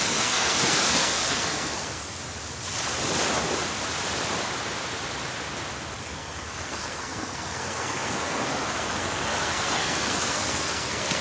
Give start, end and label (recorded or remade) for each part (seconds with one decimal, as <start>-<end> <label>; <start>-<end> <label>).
0.0-2.2 remade; 2.2-6.0 recorded; 6.0-11.2 remade